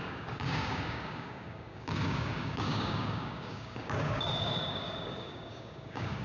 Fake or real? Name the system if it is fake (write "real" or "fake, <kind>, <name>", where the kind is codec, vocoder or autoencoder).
fake, codec, DAC